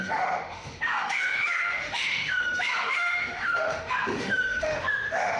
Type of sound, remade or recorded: remade